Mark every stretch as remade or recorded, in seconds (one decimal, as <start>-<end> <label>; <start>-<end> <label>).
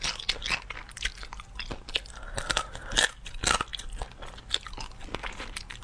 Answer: 0.0-5.8 recorded